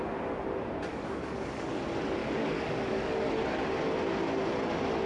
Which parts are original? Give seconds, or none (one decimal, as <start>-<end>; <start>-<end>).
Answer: 0.0-0.9; 1.8-2.2; 3.3-5.1